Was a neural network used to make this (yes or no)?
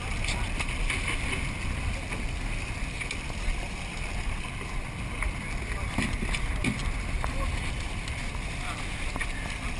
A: no